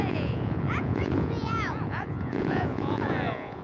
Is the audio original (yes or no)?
no